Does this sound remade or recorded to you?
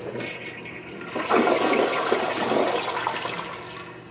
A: recorded